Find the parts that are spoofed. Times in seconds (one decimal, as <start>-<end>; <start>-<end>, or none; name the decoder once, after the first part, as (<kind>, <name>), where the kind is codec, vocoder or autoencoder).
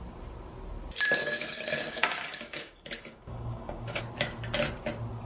1.2-4.0 (codec, DAC)